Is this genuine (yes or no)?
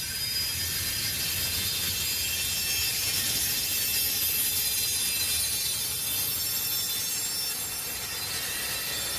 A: yes